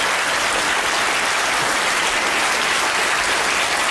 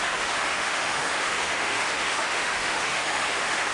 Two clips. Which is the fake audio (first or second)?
second